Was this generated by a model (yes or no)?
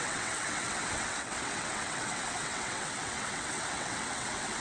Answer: yes